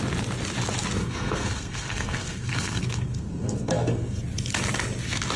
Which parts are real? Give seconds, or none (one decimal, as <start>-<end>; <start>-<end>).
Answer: 0.0-1.0; 4.2-5.4